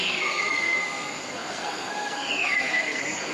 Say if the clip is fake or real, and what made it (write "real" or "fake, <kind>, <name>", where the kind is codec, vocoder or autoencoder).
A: fake, codec, SNAC